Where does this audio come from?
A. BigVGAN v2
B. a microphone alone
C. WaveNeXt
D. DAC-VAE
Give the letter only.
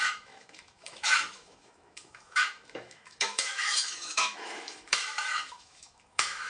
D